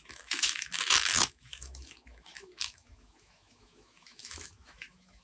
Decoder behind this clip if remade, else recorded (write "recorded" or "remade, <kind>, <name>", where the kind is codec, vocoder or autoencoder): remade, autoencoder, DAC-VAE